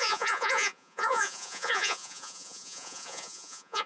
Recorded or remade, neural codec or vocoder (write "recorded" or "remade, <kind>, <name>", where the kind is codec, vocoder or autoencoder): remade, vocoder, Vocos